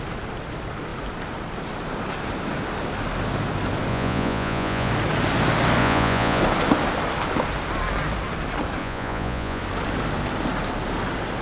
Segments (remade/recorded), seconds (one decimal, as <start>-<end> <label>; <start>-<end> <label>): 0.0-3.9 recorded; 3.9-4.9 remade; 4.9-5.8 recorded; 5.8-6.4 remade; 6.4-8.8 recorded; 8.8-9.6 remade; 9.6-11.4 recorded